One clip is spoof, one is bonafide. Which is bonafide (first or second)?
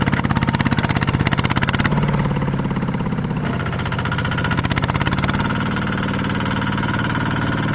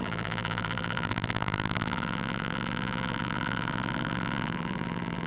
first